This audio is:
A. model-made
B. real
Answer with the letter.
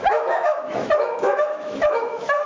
A